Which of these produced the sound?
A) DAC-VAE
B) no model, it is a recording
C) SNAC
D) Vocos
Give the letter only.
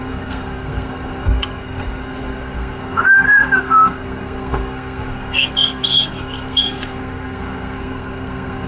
C